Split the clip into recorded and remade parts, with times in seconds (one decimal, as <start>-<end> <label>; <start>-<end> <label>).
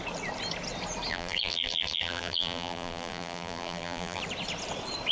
0.0-1.1 recorded; 1.1-4.2 remade; 4.2-5.1 recorded